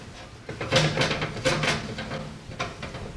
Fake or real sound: real